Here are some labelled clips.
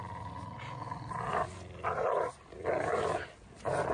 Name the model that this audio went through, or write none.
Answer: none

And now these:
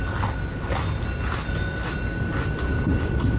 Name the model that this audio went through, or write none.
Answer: none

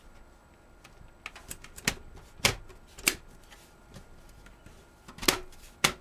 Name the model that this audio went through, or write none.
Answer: none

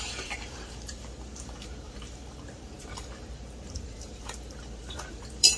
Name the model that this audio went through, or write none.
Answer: vocoder, BigVGAN v2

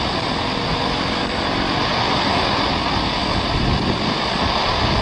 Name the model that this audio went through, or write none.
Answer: none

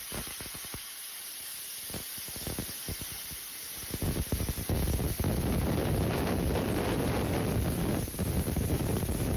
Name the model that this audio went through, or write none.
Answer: none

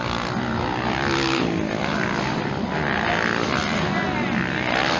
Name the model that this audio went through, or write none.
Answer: none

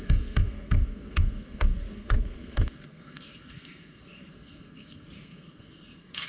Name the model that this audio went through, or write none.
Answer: codec, SNAC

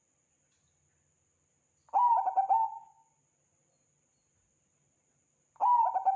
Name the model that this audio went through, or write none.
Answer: none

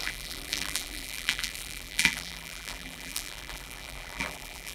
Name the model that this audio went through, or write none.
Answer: vocoder, BigVGAN v2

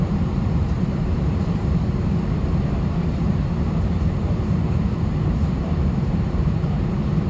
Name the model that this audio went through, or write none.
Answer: vocoder, BigVGAN v2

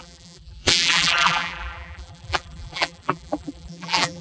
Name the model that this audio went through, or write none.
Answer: vocoder, BigVGAN v2